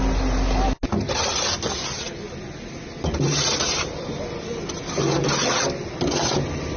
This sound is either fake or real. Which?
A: real